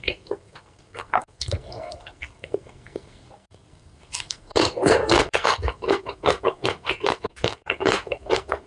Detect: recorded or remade remade